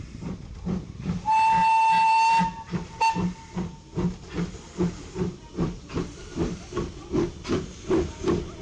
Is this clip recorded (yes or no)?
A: yes